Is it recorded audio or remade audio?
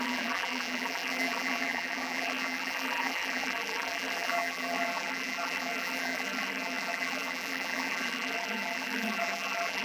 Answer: remade